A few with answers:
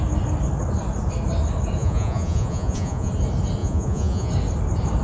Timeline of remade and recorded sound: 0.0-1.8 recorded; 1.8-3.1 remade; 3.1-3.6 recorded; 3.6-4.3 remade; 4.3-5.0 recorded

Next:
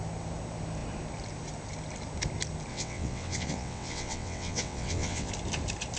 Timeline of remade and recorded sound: 0.0-2.7 recorded; 2.7-5.3 remade; 5.3-6.0 recorded

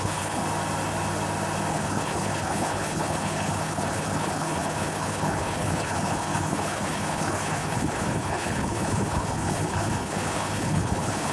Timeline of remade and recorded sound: 0.0-0.4 remade; 0.4-1.7 recorded; 1.7-11.3 remade

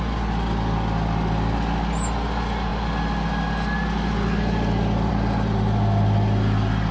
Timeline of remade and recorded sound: 0.0-6.9 recorded

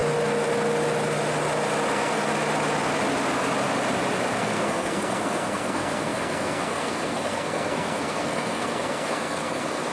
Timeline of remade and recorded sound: 0.0-1.9 recorded; 1.9-2.3 remade; 2.3-4.4 recorded; 4.4-9.9 remade

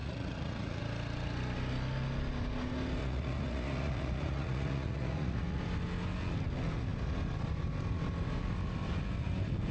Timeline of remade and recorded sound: 0.0-0.8 remade; 0.8-3.0 recorded; 3.0-5.6 remade; 5.6-9.7 recorded